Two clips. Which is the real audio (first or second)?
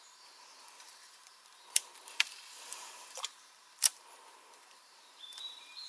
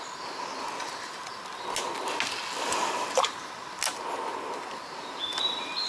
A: second